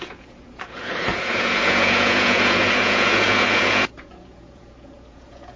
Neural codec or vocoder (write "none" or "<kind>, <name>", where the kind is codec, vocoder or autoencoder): vocoder, Vocos